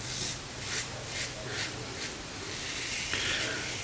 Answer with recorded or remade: recorded